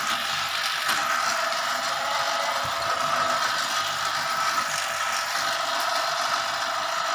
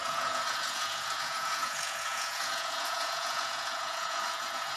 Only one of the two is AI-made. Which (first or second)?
second